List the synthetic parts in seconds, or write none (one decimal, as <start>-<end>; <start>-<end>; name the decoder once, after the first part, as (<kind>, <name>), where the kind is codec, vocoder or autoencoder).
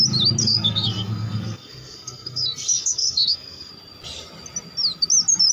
0.4-3.7 (codec, SNAC)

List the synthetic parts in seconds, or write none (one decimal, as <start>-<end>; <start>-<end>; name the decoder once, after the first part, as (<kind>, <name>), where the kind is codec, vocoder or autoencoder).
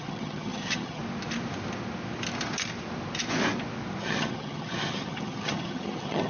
0.0-1.0 (vocoder, HiFi-GAN); 4.0-6.3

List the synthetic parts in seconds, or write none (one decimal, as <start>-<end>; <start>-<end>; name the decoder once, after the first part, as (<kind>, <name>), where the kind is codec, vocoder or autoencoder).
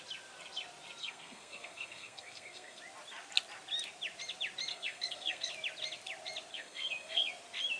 1.0-2.8 (codec, SNAC); 4.7-5.5; 6.5-7.3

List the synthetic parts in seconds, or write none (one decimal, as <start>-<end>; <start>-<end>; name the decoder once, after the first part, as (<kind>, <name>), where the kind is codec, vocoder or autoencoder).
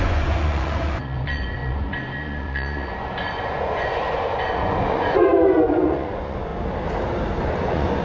0.0-6.5 (vocoder, Vocos); 7.4-8.0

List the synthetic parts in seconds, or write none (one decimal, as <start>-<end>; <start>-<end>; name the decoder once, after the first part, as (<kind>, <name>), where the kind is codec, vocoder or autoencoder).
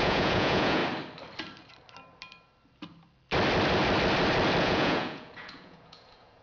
0.0-0.8 (vocoder, Vocos); 4.6-6.4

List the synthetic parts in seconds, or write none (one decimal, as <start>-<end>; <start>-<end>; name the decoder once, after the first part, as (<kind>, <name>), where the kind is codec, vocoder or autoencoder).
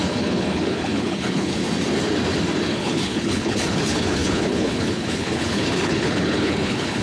0.0-1.6 (codec, HILCodec); 2.7-7.0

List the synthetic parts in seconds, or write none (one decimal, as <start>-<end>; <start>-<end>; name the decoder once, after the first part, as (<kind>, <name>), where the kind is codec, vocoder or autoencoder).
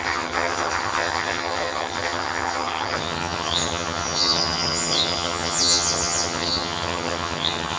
0.0-7.8 (vocoder, HiFi-GAN)